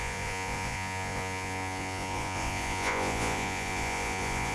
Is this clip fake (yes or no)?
yes